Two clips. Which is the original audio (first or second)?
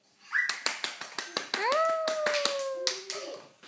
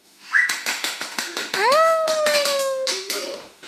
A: first